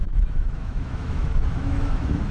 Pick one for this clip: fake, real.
fake